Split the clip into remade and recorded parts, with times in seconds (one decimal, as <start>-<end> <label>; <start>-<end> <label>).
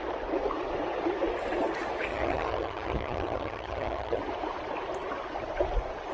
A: 0.0-2.1 recorded; 2.1-4.2 remade; 4.2-6.1 recorded